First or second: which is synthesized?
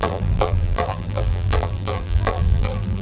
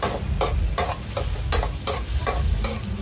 first